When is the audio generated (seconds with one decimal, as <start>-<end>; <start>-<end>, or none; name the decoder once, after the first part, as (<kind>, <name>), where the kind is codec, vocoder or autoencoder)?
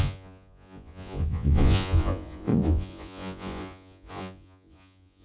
0.0-5.2 (vocoder, Vocos)